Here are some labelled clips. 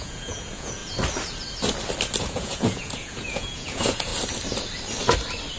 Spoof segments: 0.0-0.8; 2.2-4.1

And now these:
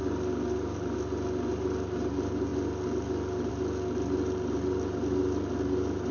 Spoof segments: none

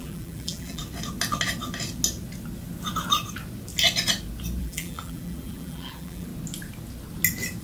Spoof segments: 0.0-0.8; 4.6-6.3

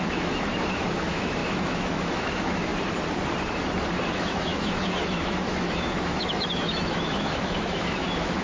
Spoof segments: 0.0-2.7; 4.1-8.4